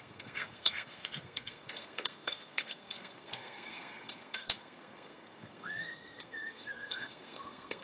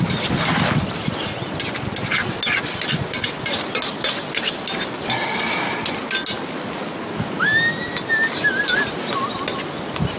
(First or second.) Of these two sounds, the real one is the second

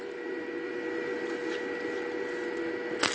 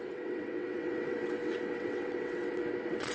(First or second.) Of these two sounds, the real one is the first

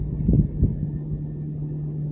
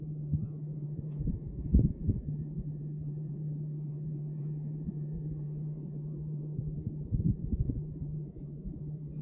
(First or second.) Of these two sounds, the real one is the first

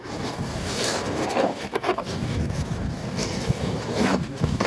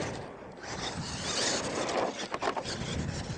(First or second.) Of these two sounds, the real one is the second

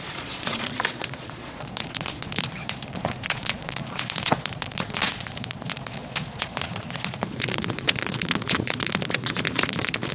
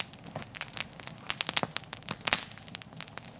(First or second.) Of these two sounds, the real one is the second